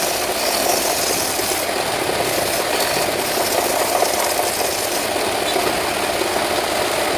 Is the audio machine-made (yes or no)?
no